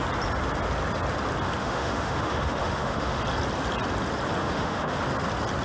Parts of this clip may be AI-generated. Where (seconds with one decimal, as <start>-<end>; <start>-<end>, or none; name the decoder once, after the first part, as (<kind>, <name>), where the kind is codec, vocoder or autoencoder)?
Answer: 1.6-3.2 (autoencoder, DAC-VAE); 4.4-5.0